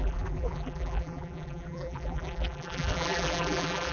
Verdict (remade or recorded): remade